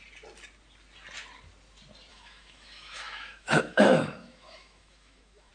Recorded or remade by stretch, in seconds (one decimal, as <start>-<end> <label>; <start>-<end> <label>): 0.0-2.1 recorded; 2.1-5.5 remade